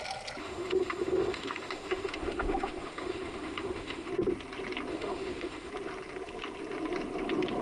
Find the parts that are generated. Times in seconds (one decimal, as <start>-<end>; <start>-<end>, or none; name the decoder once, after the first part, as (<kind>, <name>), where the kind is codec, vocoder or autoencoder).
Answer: 0.4-4.1 (autoencoder, DAC-VAE); 4.9-5.7